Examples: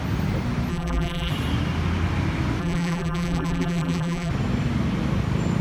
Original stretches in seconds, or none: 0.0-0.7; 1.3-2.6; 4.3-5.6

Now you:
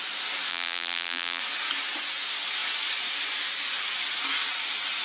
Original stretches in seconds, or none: 0.0-0.5; 1.4-5.0

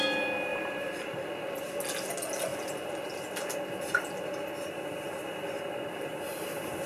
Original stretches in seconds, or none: 0.0-0.5; 1.3-6.9

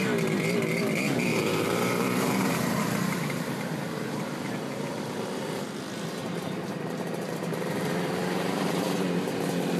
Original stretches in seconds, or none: 0.0-1.3; 4.9-6.2; 8.5-9.8

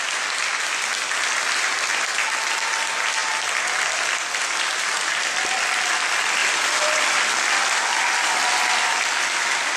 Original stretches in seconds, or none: 0.0-3.2; 5.5-6.4; 7.4-9.8